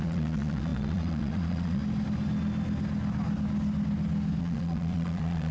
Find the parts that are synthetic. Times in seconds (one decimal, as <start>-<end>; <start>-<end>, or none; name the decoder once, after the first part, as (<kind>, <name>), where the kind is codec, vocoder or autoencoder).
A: 0.0-1.8 (vocoder, Vocos); 4.4-5.5